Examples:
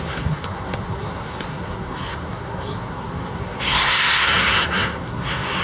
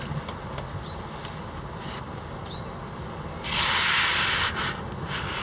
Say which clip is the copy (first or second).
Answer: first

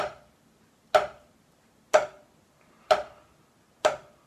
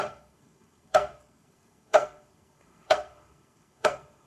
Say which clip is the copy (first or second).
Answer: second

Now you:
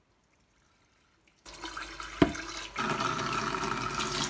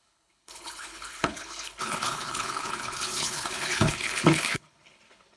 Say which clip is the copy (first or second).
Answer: second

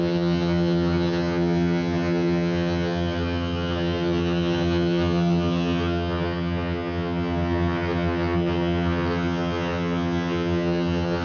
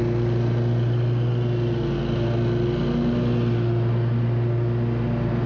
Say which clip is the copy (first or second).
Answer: first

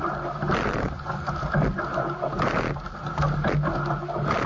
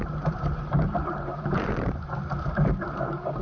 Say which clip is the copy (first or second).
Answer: second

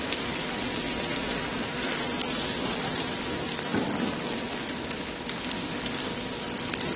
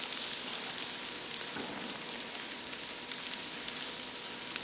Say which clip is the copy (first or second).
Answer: first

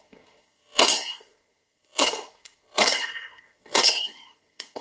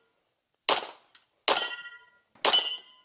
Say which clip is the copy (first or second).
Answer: first